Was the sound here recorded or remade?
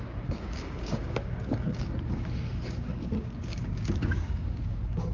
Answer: remade